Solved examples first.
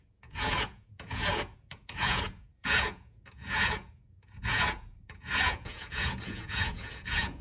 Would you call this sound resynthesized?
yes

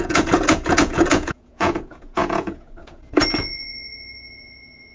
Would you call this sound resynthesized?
yes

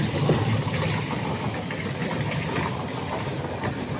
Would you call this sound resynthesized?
no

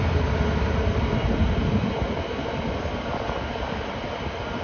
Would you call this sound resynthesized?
no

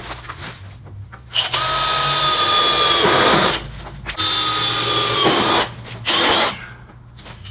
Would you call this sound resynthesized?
no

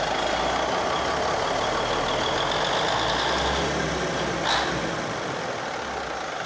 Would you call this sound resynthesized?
no